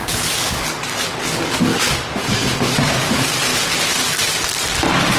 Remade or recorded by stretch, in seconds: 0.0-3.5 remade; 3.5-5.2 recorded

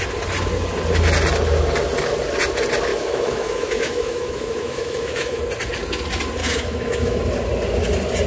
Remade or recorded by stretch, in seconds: 0.0-2.9 recorded; 2.9-5.4 remade; 5.4-6.4 recorded; 6.4-7.2 remade; 7.2-8.3 recorded

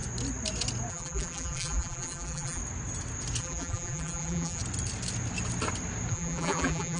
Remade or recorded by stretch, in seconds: 0.0-0.9 recorded; 0.9-2.6 remade; 2.6-3.4 recorded; 3.4-4.6 remade; 4.6-6.1 recorded; 6.1-7.0 remade

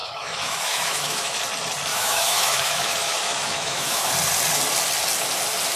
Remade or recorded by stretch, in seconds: 0.0-1.4 remade; 1.4-1.9 recorded; 1.9-4.1 remade; 4.1-5.8 recorded

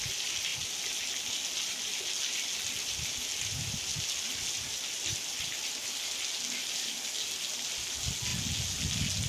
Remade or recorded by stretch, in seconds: 0.0-9.3 recorded

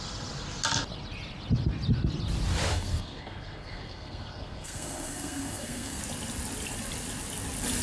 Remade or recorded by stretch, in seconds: 0.0-2.7 recorded; 2.7-6.0 remade; 6.0-7.8 recorded

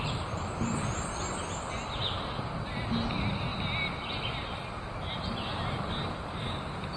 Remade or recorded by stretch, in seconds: 0.0-7.0 recorded

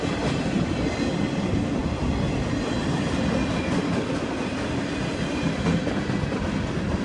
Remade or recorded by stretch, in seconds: 0.0-7.0 recorded